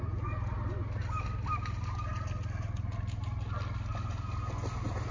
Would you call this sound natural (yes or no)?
yes